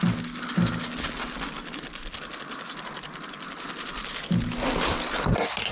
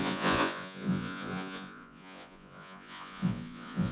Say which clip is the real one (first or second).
first